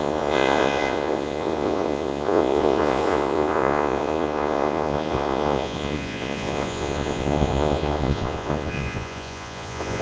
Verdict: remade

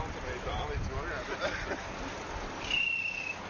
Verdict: recorded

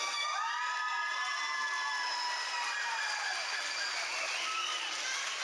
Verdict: recorded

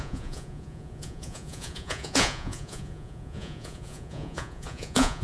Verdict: remade